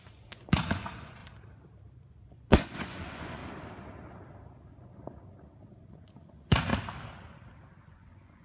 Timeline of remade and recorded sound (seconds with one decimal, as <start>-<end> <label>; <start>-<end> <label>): 0.0-1.2 remade; 1.2-2.1 recorded; 2.1-3.4 remade; 3.4-5.9 recorded; 5.9-6.7 remade; 6.7-7.8 recorded; 7.8-8.4 remade